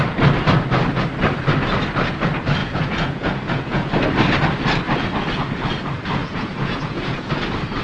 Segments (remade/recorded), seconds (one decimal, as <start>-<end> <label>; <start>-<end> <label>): 0.0-2.6 recorded; 2.6-3.9 remade; 3.9-6.2 recorded; 6.2-7.3 remade; 7.3-7.8 recorded